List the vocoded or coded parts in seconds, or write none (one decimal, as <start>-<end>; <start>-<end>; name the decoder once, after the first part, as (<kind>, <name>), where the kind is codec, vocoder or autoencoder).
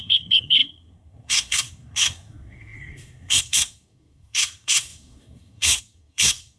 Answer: 0.0-6.6 (codec, SNAC)